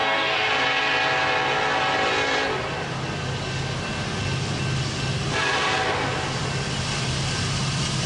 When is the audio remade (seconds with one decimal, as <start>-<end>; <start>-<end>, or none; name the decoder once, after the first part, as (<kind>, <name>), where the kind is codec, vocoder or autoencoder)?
0.0-0.5 (codec, SNAC)